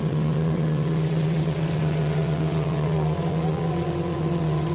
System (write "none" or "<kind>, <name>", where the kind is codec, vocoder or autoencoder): vocoder, WaveNeXt